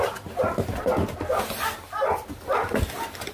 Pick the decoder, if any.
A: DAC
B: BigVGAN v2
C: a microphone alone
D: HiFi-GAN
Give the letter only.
C